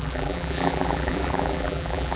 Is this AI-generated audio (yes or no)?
yes